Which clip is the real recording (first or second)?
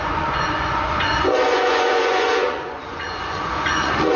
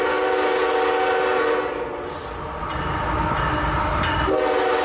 second